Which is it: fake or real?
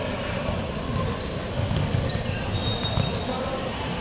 real